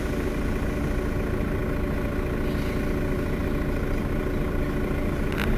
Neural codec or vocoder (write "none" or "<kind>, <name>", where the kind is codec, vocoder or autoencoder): none